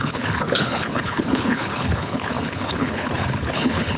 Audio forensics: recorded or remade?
remade